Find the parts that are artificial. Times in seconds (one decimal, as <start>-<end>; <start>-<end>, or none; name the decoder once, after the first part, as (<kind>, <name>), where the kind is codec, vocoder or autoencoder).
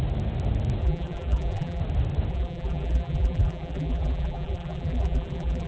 0.8-1.8 (vocoder, BigVGAN v2); 2.3-5.7